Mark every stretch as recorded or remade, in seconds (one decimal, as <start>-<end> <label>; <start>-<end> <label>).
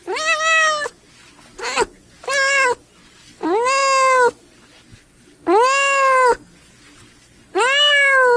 0.0-8.4 recorded